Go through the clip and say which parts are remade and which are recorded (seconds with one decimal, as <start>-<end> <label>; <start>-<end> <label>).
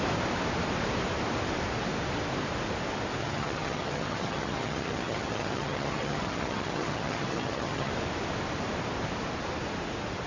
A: 0.0-3.2 recorded; 3.2-7.9 remade; 7.9-10.3 recorded